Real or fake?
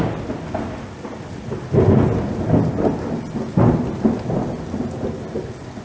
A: real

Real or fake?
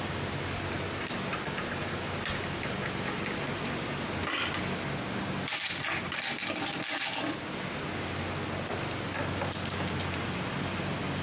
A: real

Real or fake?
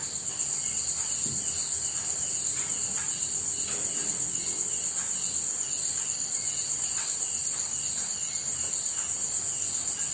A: real